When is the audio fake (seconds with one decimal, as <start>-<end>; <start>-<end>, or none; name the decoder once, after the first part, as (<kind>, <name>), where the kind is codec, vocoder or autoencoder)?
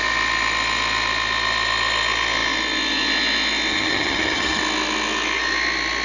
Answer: 3.7-4.6 (vocoder, HiFi-GAN)